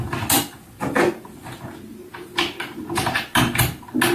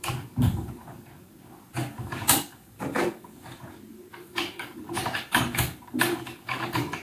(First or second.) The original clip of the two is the first